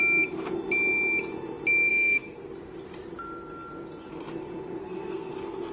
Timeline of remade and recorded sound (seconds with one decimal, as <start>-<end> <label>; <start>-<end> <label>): 0.0-1.9 recorded; 1.9-2.5 remade; 2.5-4.8 recorded; 4.8-5.3 remade; 5.3-5.7 recorded